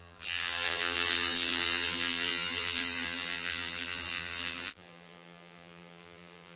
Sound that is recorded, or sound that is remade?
remade